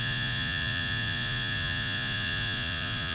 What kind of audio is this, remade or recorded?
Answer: remade